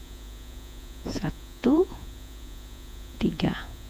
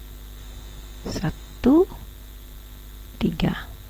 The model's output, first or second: first